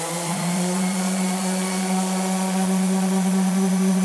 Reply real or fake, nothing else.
fake